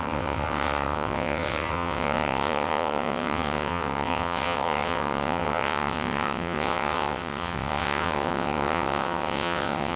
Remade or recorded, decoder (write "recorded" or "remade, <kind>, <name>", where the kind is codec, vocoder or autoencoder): remade, vocoder, WaveNeXt